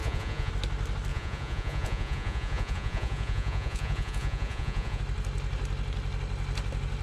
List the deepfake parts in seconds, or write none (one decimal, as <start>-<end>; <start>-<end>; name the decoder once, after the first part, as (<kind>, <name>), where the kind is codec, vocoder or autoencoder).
0.0-0.5 (vocoder, Vocos); 1.1-5.0